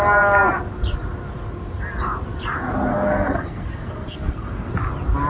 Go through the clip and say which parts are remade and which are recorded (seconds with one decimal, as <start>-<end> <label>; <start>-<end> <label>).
0.0-2.9 recorded; 2.9-4.7 remade; 4.7-5.3 recorded